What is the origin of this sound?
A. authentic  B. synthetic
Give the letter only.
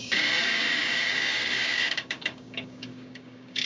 B